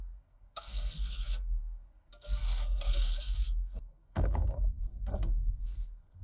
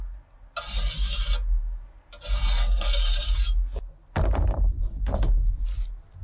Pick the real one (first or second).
second